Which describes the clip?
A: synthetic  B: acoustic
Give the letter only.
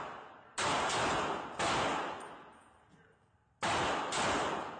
B